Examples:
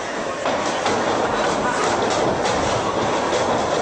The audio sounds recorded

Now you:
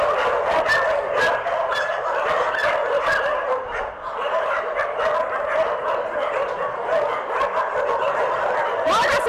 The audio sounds recorded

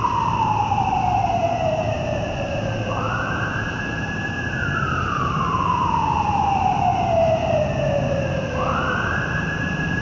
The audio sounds remade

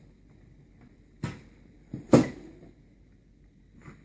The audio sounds recorded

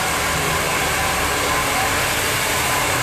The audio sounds remade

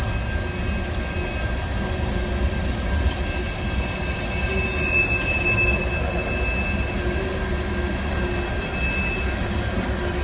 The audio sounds recorded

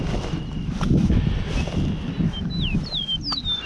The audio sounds recorded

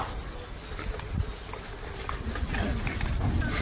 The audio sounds recorded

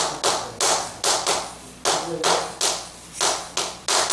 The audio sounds recorded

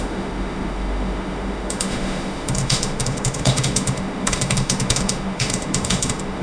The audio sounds remade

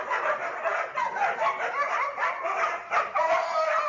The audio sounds recorded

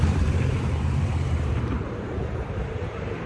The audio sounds remade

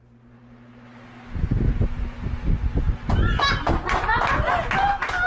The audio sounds recorded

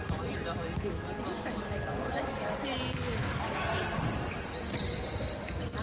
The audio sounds recorded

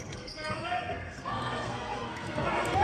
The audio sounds remade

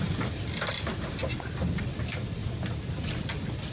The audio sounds recorded